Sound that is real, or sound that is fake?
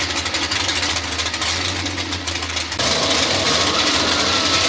real